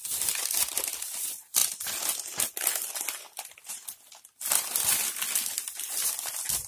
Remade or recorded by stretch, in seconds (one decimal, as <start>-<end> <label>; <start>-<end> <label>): 0.0-6.7 recorded